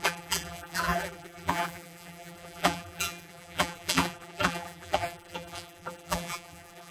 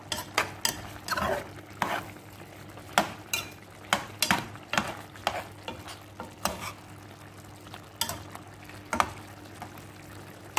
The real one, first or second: second